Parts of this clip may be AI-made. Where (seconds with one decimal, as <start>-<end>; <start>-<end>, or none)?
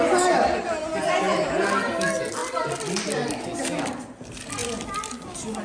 none